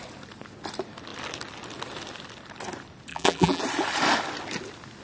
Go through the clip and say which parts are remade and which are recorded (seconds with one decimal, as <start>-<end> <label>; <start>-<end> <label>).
0.0-3.1 recorded; 3.1-3.6 remade; 3.6-5.0 recorded

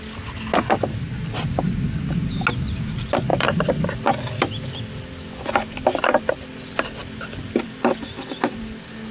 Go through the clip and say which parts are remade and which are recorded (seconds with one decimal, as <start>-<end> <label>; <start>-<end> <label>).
0.0-3.3 recorded; 3.3-6.6 remade; 6.6-7.0 recorded; 7.0-8.6 remade; 8.6-9.1 recorded

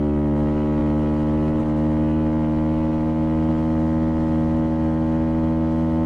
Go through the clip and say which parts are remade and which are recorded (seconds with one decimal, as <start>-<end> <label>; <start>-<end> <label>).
0.0-6.1 recorded

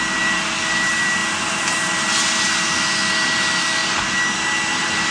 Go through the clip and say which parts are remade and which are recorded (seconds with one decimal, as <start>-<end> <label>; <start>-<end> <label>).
0.0-1.2 recorded; 1.2-1.9 remade; 1.9-5.1 recorded